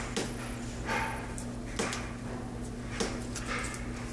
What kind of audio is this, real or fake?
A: real